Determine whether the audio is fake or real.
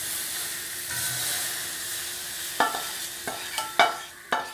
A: real